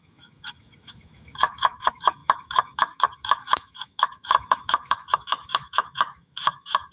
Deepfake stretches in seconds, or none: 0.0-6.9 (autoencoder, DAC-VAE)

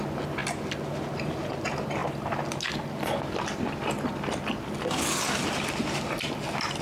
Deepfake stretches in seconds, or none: none

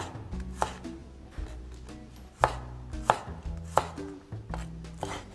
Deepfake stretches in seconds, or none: 1.0-1.6 (vocoder, BigVGAN v2)

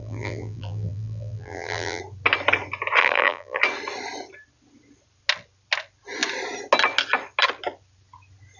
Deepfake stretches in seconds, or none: 0.0-2.0 (vocoder, BigVGAN v2); 3.0-3.6

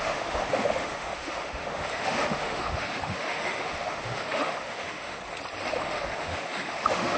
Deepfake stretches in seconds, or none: 0.0-5.2 (autoencoder, DAC-VAE); 5.7-7.2